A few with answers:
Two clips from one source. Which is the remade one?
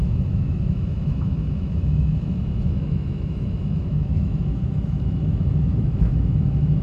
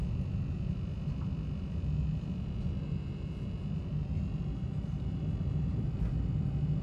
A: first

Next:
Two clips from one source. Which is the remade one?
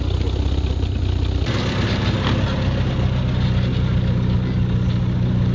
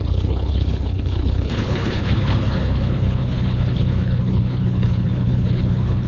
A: second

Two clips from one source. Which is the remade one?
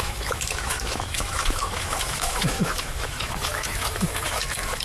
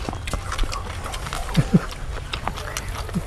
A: first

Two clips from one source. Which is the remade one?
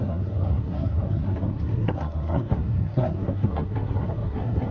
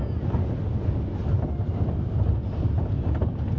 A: first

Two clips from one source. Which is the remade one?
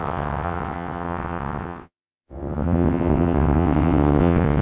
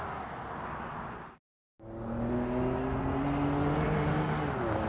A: first